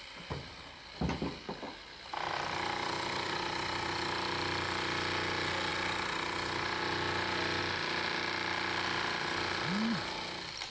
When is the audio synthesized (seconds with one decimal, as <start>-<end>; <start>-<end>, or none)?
none